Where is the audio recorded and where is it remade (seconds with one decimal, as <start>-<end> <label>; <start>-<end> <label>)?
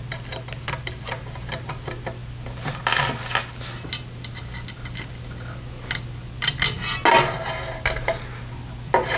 0.0-9.2 recorded